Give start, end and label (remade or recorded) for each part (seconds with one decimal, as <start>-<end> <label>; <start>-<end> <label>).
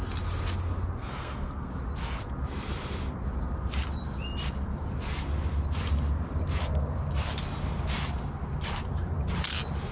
0.0-1.0 recorded; 1.0-1.7 remade; 1.7-9.9 recorded